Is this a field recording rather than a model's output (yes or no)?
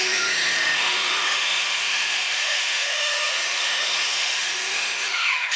no